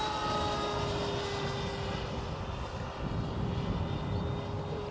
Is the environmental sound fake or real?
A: real